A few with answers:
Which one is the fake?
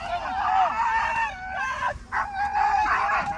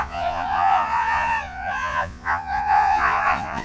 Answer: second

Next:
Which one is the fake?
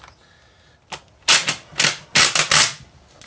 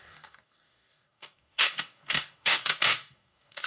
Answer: second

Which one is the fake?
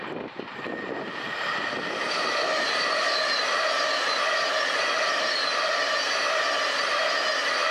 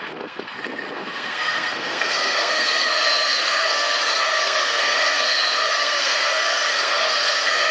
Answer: second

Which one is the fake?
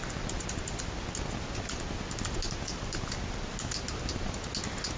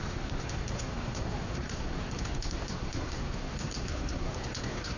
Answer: second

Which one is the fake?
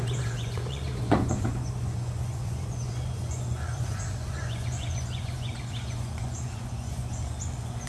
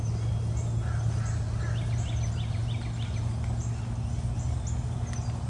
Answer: first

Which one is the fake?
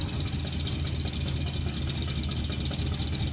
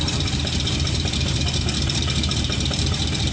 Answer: second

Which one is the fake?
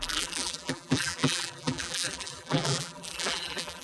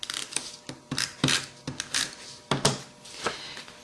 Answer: first